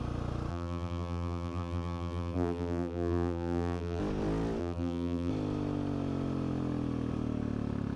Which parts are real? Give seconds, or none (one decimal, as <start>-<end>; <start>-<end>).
0.0-0.5; 4.0-4.6; 5.3-8.0